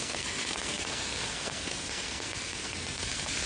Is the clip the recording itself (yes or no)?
no